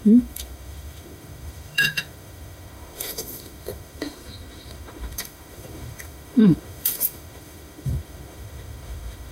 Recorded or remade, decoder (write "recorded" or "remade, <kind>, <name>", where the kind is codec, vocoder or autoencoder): remade, autoencoder, DAC-VAE